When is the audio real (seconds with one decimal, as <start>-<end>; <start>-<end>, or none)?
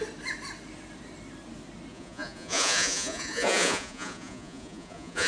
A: 0.0-1.9